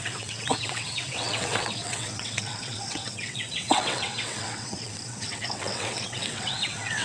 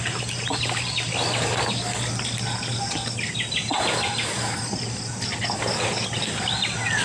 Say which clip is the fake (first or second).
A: first